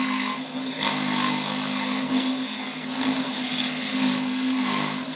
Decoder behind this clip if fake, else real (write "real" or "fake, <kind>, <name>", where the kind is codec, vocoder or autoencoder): fake, codec, SNAC